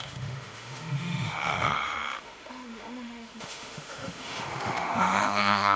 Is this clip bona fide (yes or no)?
no